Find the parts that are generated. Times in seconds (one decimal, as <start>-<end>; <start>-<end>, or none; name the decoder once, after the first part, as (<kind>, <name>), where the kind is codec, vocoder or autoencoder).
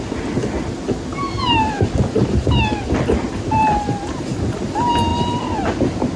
1.1-4.2 (vocoder, BigVGAN v2); 5.1-6.2